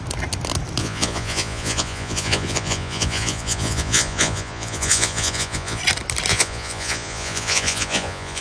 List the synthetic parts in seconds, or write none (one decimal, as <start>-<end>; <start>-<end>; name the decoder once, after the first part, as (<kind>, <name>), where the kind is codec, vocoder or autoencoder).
0.8-5.8 (vocoder, Vocos); 6.3-8.4